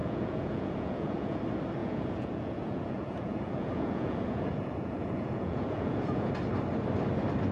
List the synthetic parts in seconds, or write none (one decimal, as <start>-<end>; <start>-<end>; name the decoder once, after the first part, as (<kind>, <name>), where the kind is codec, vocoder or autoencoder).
0.0-1.4 (vocoder, Vocos); 1.8-6.3